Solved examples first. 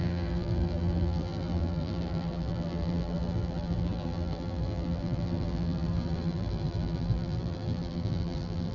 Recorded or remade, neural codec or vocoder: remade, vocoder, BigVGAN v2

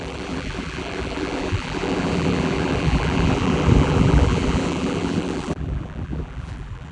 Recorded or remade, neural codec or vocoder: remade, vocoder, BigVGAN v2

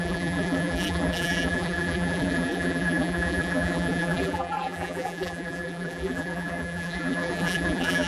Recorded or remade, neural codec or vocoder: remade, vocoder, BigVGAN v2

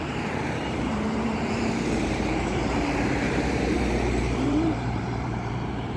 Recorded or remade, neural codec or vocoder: remade, vocoder, BigVGAN v2